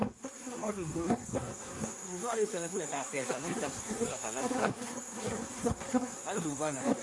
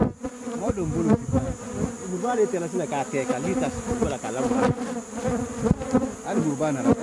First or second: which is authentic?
second